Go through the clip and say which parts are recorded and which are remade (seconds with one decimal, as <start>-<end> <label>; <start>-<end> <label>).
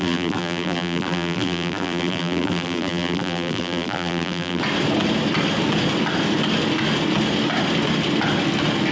0.0-4.6 remade; 4.6-8.9 recorded